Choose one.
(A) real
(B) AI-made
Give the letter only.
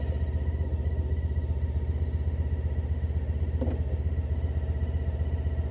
A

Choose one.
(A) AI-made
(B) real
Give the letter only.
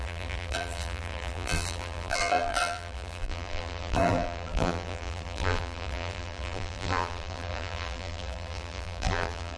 A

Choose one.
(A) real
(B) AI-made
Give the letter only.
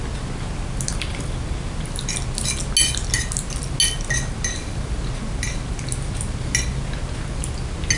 A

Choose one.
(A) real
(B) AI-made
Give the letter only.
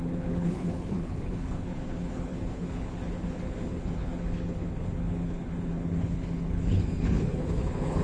B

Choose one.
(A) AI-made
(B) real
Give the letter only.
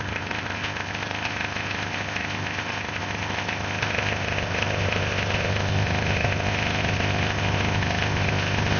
A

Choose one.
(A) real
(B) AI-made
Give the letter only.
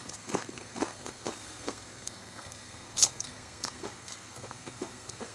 B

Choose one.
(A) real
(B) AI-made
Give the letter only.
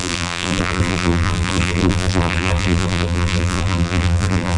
B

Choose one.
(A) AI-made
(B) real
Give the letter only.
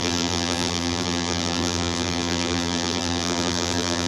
A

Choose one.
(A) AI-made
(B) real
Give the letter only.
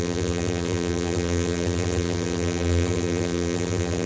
A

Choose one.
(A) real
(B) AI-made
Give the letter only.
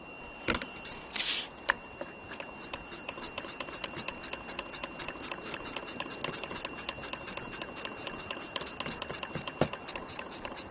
B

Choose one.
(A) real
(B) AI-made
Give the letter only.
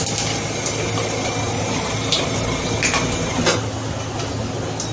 A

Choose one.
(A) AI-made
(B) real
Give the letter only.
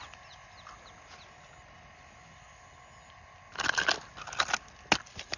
B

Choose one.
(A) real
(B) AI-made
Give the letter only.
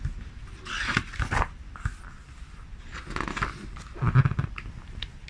A